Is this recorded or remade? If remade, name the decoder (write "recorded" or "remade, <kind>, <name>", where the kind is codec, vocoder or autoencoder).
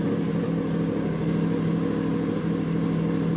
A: recorded